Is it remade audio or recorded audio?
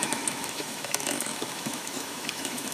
remade